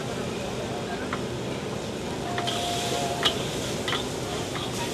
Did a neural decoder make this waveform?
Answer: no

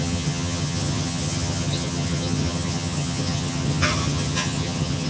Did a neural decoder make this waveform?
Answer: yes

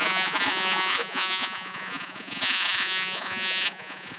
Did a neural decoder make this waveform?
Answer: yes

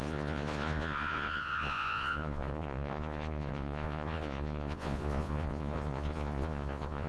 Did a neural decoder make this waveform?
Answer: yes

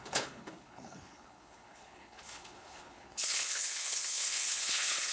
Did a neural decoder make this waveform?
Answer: yes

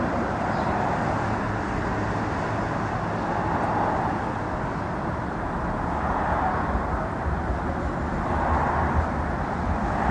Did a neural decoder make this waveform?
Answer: no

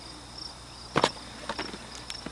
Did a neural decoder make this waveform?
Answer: no